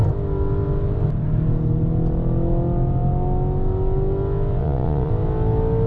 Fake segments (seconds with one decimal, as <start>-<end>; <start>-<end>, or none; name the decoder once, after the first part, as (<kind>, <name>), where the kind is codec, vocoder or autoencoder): 4.6-5.1 (vocoder, Vocos)